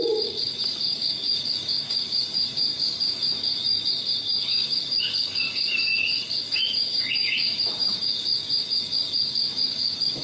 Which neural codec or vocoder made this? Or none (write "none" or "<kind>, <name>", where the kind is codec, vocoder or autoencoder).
codec, DAC